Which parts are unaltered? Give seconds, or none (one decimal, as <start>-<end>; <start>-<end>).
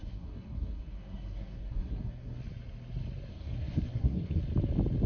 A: 2.4-3.3; 4.4-5.1